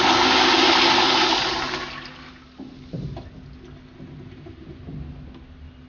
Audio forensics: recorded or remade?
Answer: recorded